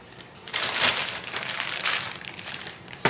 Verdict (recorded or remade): remade